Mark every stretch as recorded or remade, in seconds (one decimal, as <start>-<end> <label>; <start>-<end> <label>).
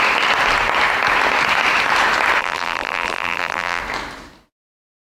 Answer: 0.0-2.4 recorded; 2.4-3.8 remade; 3.8-5.1 recorded